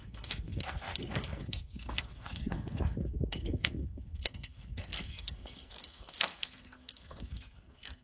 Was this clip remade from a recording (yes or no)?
yes